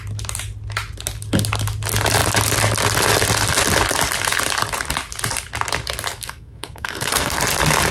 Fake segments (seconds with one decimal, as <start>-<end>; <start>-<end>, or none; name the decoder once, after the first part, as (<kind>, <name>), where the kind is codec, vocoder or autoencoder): 6.1-7.4 (codec, SNAC)